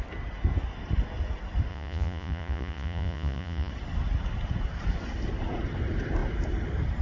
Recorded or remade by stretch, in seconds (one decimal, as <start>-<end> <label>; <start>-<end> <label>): 0.0-1.7 recorded; 1.7-3.7 remade; 3.7-7.0 recorded